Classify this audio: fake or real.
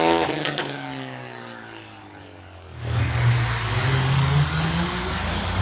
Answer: fake